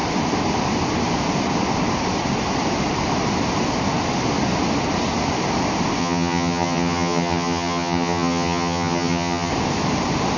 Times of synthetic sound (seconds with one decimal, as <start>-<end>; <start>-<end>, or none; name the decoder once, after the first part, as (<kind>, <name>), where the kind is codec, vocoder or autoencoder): 6.0-9.5 (vocoder, HiFi-GAN)